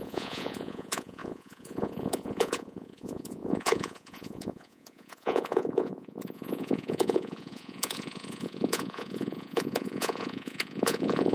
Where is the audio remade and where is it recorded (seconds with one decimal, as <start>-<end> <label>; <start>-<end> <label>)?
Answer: 0.0-11.3 remade

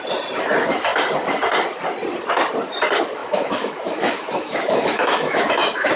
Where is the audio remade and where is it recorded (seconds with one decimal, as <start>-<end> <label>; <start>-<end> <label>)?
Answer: 0.0-3.2 recorded; 3.2-6.0 remade

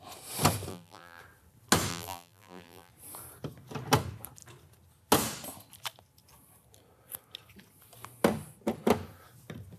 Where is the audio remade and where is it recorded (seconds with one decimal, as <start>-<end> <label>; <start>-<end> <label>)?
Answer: 0.0-0.7 recorded; 0.7-1.2 remade; 1.2-1.9 recorded; 1.9-2.9 remade; 2.9-9.8 recorded

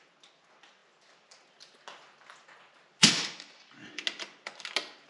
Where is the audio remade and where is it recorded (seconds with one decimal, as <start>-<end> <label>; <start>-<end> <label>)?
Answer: 0.0-5.1 recorded

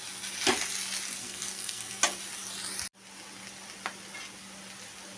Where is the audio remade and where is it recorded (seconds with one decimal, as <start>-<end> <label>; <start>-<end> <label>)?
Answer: 0.0-1.2 recorded; 1.2-2.0 remade; 2.0-5.2 recorded

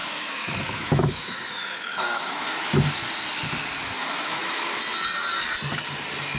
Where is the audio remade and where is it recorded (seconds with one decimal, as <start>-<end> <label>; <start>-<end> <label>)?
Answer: 0.0-2.7 remade; 2.7-4.1 recorded; 4.1-4.8 remade; 4.8-6.4 recorded

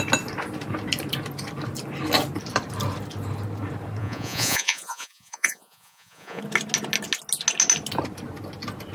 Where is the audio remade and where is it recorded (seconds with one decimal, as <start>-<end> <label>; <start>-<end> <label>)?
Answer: 0.0-4.0 recorded; 4.0-6.4 remade; 6.4-8.9 recorded

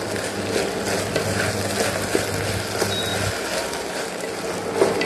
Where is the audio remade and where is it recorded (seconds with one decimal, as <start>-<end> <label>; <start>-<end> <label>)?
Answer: 0.0-5.1 recorded